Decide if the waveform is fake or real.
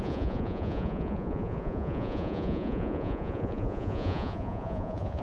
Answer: fake